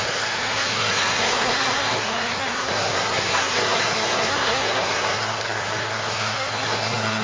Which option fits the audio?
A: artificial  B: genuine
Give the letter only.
A